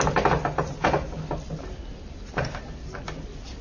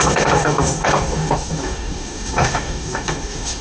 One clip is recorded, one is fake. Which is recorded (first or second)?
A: first